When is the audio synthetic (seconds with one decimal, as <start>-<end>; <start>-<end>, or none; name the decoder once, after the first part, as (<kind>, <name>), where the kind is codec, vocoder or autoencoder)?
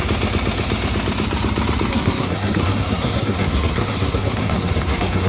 1.9-5.3 (codec, SNAC)